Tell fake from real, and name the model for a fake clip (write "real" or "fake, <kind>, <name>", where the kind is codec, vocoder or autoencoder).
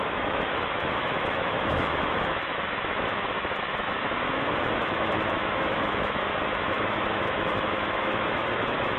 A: fake, autoencoder, DAC-VAE